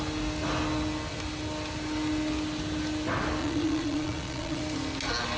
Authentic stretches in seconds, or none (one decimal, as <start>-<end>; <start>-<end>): 0.0-3.4; 4.6-5.4